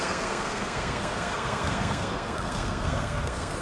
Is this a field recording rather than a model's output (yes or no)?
no